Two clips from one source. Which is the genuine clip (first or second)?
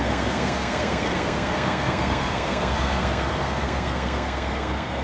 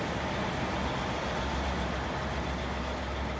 second